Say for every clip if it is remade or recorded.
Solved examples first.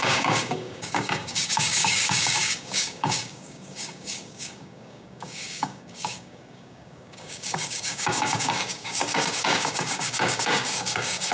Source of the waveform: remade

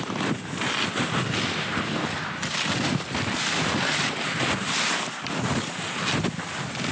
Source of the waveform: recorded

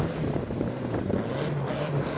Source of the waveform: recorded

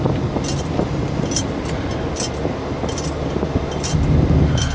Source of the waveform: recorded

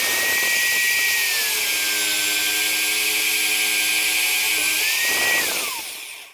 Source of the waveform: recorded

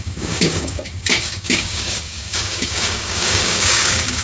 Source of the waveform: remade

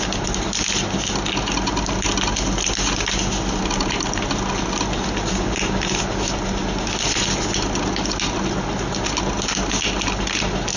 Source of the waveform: recorded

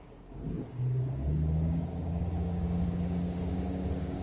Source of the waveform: remade